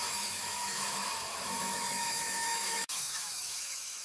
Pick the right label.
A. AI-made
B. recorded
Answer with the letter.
A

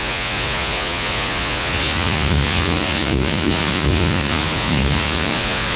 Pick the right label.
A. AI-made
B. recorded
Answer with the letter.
A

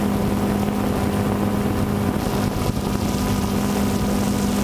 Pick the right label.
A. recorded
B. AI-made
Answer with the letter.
A